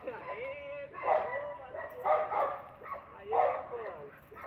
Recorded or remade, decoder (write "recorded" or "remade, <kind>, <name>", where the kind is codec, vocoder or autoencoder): recorded